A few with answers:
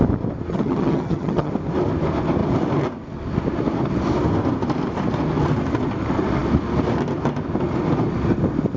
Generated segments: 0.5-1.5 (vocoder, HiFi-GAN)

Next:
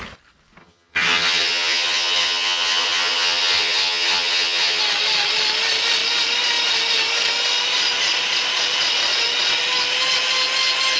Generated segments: 0.6-4.8 (vocoder, HiFi-GAN)

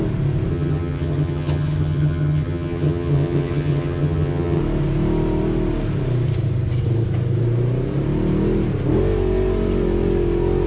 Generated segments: 0.5-4.6 (vocoder, HiFi-GAN)

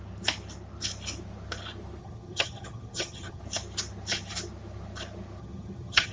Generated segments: 2.0-3.4 (vocoder, HiFi-GAN); 5.4-6.1

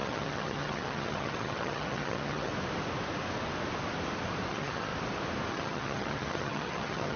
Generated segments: 0.0-2.5 (vocoder, HiFi-GAN); 4.5-4.9; 5.5-7.2

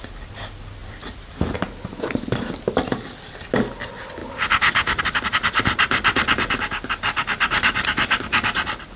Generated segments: none

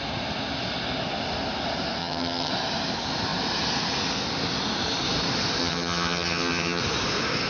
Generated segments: 2.0-2.5 (vocoder, HiFi-GAN); 5.6-6.8